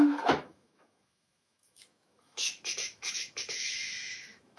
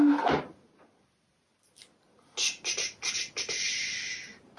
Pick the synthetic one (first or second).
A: first